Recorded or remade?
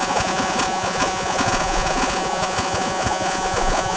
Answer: remade